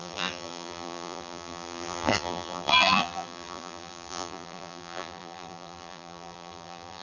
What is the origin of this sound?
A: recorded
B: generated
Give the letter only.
B